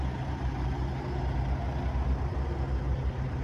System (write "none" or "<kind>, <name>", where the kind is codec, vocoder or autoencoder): none